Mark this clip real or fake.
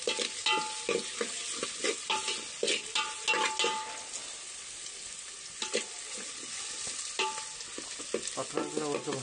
real